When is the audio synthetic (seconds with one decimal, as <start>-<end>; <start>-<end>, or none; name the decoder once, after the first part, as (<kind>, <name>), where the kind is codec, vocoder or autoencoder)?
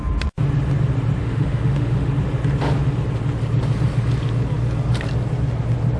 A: 1.2-2.1 (autoencoder, DAC-VAE)